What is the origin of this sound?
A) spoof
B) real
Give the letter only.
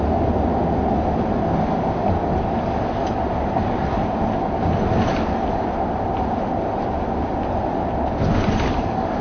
B